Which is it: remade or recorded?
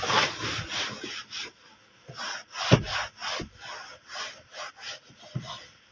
recorded